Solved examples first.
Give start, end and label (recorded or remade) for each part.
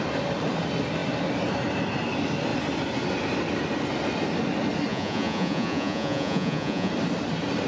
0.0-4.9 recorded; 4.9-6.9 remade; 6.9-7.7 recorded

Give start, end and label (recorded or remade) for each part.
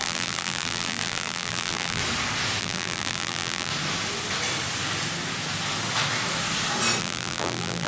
0.0-2.0 remade; 2.0-2.6 recorded; 2.6-3.7 remade; 3.7-7.0 recorded; 7.0-7.9 remade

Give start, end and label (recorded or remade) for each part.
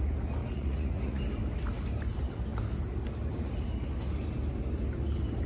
0.0-0.4 recorded; 0.4-1.2 remade; 1.2-5.5 recorded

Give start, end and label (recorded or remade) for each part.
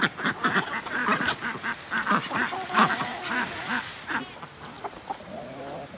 0.0-6.0 recorded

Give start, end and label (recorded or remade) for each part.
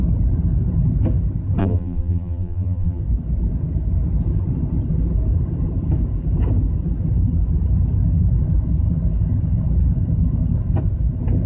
0.0-1.6 recorded; 1.6-3.0 remade; 3.0-11.5 recorded